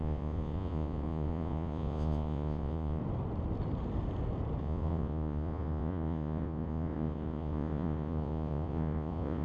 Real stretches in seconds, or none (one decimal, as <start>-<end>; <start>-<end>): 3.0-4.6